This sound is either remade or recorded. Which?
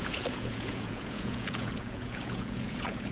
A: remade